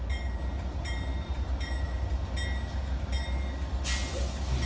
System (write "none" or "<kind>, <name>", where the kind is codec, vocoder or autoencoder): none